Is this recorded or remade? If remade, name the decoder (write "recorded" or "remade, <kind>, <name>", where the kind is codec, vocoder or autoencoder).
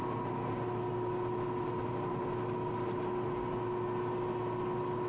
recorded